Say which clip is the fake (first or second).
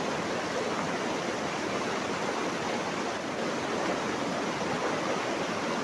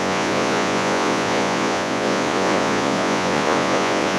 second